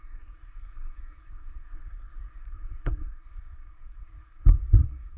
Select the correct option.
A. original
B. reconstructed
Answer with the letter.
B